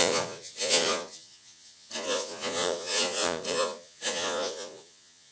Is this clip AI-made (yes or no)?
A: yes